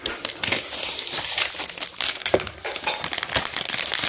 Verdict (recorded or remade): recorded